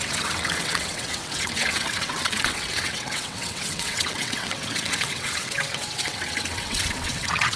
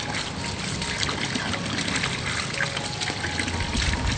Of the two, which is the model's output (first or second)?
first